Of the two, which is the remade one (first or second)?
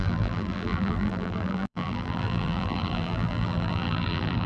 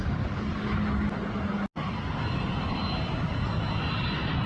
first